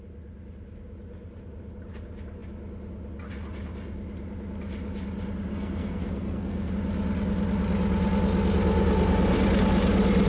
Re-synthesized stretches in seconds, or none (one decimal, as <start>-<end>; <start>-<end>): 5.5-6.7